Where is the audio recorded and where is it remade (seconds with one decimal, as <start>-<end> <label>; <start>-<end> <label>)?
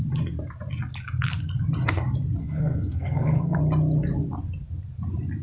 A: 0.0-2.4 recorded; 2.4-3.6 remade; 3.6-5.4 recorded